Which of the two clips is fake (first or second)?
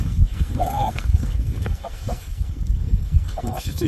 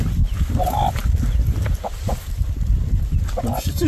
first